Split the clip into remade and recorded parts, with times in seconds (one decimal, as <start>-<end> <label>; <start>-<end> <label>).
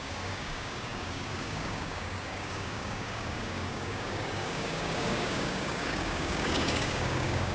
0.0-7.5 remade